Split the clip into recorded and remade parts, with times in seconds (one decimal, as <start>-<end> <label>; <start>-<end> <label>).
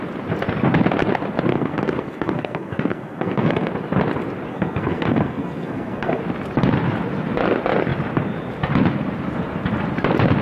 0.0-1.5 recorded; 1.5-3.7 remade; 3.7-4.5 recorded; 4.5-6.2 remade; 6.2-10.4 recorded